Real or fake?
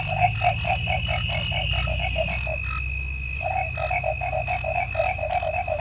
real